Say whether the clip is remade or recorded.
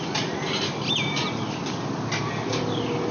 recorded